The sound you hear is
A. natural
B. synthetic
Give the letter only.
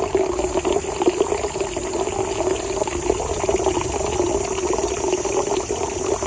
A